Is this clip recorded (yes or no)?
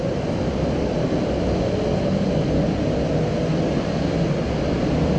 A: yes